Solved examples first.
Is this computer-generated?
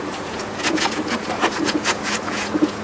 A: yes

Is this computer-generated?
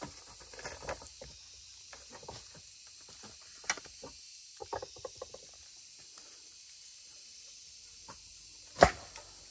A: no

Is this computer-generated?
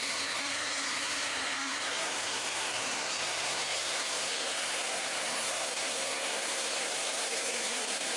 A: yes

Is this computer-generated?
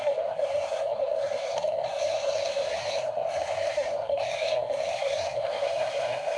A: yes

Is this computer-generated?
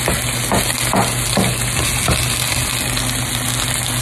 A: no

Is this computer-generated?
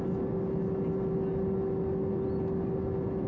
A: no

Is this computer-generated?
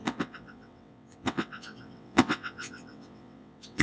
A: yes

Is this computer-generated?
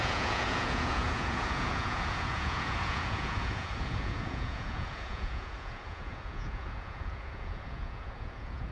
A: yes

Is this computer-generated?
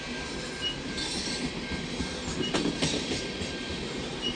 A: no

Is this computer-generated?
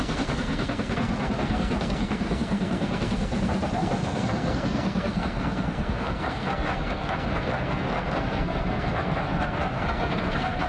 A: yes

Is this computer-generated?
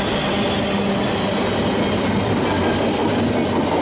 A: no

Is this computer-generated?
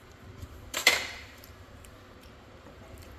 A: yes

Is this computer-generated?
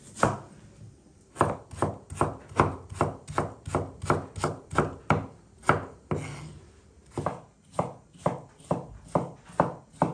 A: no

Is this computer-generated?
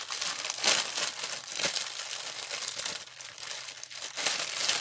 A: no